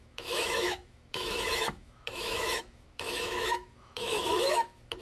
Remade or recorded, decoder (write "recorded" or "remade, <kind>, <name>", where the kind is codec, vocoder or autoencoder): remade, autoencoder, DAC-VAE